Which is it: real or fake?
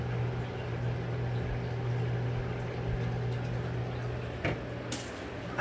real